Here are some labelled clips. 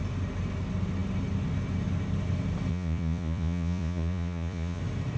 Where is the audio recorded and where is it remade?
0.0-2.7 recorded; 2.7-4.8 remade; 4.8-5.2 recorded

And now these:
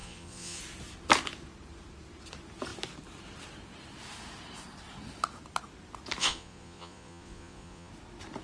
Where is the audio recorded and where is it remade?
0.0-0.6 remade; 0.6-6.2 recorded; 6.2-7.9 remade; 7.9-8.4 recorded

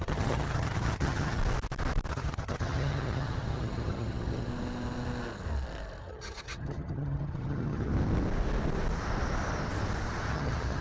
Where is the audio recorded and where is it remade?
0.0-1.4 remade; 1.4-2.1 recorded; 2.1-4.5 remade; 4.5-6.0 recorded; 6.0-7.9 remade; 7.9-10.3 recorded; 10.3-10.8 remade

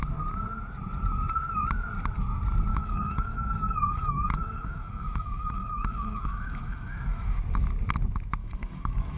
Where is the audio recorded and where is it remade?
0.0-2.7 recorded; 2.7-7.4 remade; 7.4-8.4 recorded; 8.4-9.2 remade

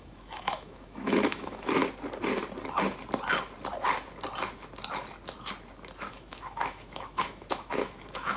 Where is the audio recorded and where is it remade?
0.0-1.8 remade; 1.8-6.1 recorded; 6.1-8.4 remade

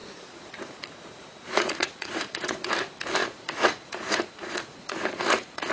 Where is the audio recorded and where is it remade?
0.0-2.7 remade; 2.7-3.2 recorded; 3.2-5.7 remade